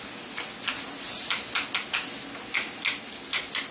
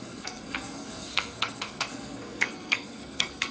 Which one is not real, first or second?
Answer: second